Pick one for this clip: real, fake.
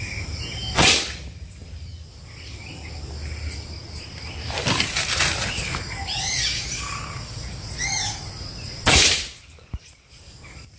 real